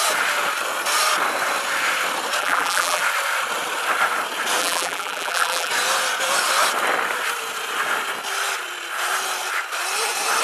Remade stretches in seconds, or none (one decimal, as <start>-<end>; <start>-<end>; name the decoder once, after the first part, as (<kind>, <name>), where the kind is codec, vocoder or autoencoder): 2.4-3.0 (vocoder, BigVGAN v2); 4.6-5.7